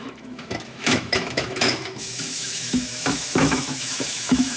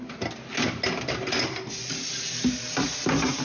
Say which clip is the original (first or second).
second